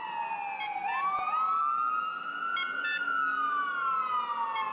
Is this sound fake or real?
real